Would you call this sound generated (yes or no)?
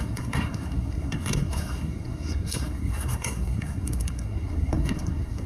yes